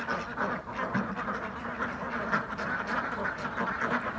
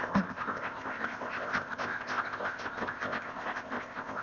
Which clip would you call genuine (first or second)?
first